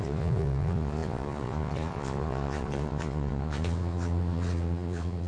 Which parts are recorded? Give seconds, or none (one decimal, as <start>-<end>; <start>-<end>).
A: none